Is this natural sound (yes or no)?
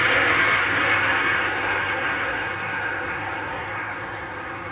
no